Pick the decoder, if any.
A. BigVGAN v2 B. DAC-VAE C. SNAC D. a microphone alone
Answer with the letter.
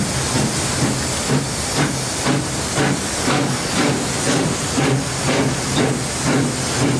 D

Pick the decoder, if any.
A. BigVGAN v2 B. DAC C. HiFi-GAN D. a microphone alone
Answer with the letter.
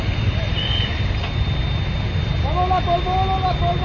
D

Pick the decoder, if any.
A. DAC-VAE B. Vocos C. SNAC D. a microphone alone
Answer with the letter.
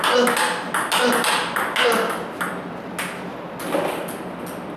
D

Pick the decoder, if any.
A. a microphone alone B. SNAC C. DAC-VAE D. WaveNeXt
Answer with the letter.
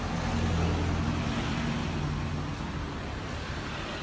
A